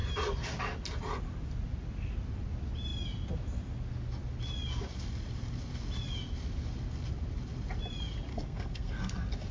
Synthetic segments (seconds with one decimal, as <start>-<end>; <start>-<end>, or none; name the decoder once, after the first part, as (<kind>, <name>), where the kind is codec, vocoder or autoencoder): 8.3-9.1 (codec, SNAC)